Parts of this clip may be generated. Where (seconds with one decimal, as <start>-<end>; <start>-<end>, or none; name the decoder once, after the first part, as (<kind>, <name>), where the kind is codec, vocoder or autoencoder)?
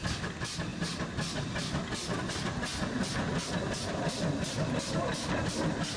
none